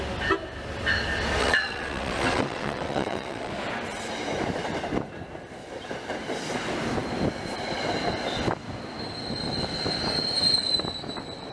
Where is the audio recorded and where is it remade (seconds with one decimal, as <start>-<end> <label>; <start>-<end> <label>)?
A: 0.0-1.4 recorded; 1.4-3.5 remade; 3.5-11.5 recorded